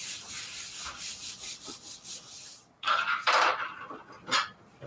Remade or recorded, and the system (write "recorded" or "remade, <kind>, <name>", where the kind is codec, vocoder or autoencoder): remade, vocoder, BigVGAN v2